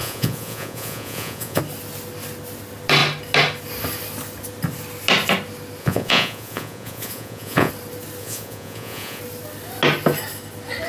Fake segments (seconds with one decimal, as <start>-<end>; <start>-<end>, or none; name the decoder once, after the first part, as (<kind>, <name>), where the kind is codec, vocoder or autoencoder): 0.0-1.6 (vocoder, Vocos); 5.8-7.7; 8.2-9.2